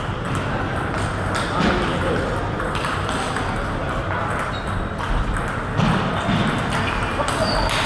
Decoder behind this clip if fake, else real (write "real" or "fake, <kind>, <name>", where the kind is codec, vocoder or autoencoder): real